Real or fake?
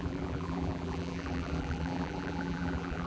fake